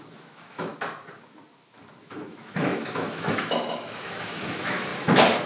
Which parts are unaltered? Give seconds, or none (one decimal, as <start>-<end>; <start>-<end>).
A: 0.7-2.0